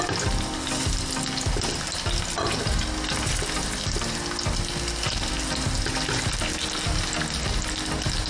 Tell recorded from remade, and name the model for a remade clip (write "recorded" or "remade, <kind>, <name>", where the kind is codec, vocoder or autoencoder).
recorded